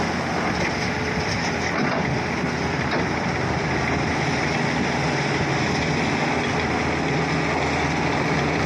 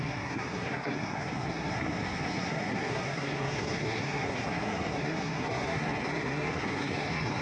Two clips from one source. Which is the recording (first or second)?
first